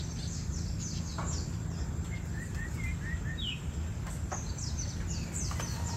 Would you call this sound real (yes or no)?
yes